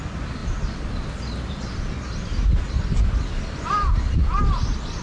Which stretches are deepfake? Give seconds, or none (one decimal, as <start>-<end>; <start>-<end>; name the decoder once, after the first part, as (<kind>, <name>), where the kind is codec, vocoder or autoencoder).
none